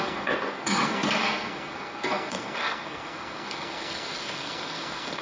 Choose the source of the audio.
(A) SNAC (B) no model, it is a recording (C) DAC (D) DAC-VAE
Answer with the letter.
A